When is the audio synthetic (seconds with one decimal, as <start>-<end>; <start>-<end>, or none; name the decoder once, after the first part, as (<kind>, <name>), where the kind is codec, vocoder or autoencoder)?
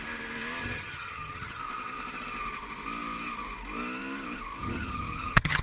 0.6-1.6 (vocoder, HiFi-GAN); 4.6-5.6